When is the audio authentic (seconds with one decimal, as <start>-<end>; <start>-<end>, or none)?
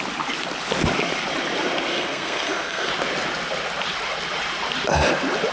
0.0-1.9; 2.9-5.5